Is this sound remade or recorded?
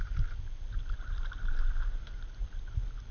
recorded